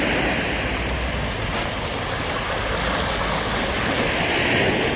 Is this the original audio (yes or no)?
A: yes